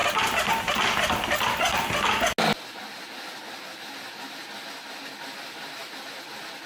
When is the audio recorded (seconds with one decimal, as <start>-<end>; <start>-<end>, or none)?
0.0-6.7